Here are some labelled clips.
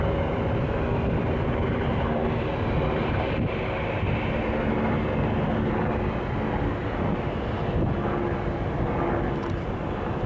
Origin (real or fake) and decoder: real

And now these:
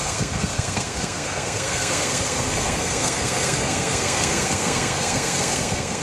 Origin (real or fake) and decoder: fake, codec, SNAC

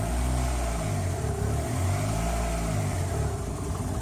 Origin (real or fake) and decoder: real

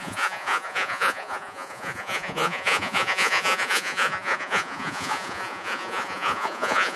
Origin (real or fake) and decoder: fake, vocoder, Vocos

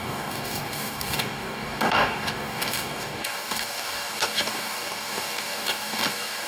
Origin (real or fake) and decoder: fake, codec, DAC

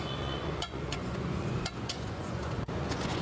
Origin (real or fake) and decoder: fake, vocoder, Vocos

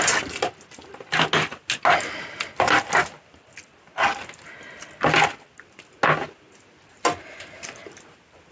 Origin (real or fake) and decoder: real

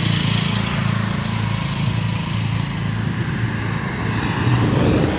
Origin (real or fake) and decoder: real